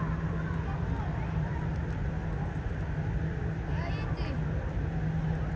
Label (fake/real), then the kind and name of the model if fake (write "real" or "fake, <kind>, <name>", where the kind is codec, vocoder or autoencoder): real